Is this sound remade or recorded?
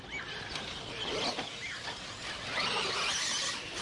recorded